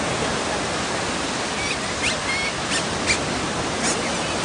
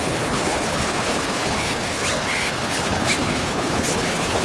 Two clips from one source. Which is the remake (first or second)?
second